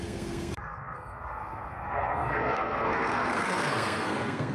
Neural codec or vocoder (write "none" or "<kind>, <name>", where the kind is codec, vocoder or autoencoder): codec, SNAC